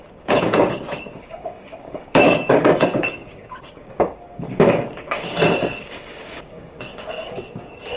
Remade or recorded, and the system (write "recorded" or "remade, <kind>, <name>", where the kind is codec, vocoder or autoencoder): remade, codec, DAC